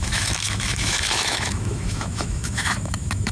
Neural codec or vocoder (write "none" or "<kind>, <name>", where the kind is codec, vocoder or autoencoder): autoencoder, DAC-VAE